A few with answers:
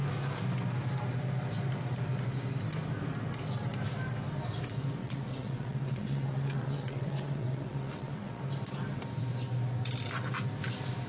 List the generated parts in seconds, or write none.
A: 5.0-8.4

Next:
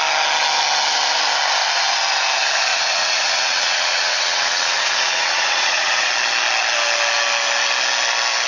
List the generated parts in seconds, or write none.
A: 2.7-6.1

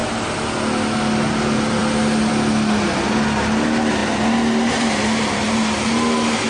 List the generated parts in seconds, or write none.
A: none

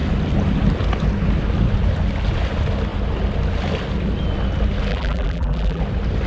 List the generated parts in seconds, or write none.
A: 4.9-5.8

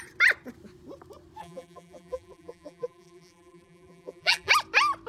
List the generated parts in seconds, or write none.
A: 1.4-4.5